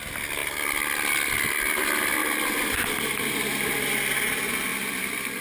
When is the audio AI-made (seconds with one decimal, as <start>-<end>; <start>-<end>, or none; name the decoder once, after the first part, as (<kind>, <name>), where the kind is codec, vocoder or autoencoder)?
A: 2.2-4.0 (vocoder, BigVGAN v2); 4.7-5.4